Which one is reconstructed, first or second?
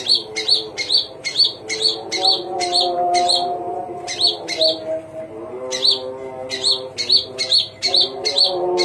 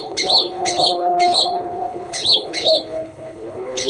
second